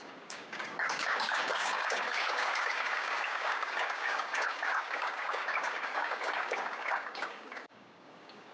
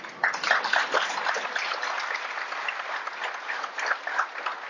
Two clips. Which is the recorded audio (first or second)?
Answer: second